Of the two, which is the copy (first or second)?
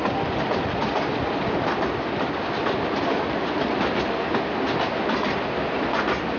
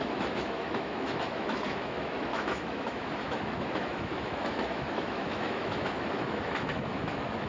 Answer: second